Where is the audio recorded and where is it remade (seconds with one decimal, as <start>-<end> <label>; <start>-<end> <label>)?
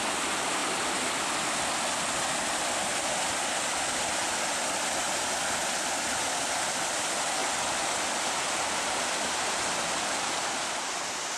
0.0-11.4 recorded